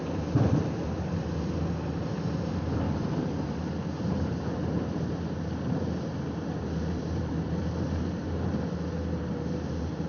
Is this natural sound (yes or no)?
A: no